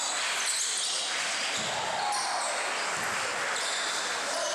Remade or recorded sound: recorded